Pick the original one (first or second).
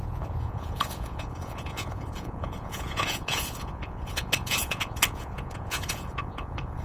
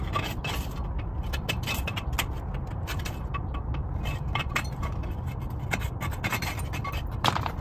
second